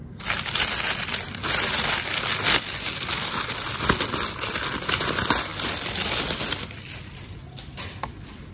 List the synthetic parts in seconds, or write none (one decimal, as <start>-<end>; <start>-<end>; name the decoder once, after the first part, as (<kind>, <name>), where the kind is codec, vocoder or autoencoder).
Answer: none